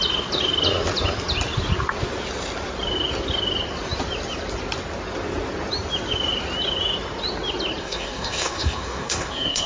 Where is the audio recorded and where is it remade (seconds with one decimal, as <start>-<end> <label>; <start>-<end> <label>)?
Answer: 0.0-7.8 recorded; 7.8-9.7 remade